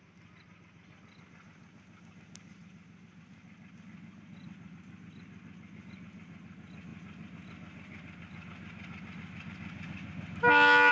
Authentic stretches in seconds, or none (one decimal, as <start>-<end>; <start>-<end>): 0.0-10.9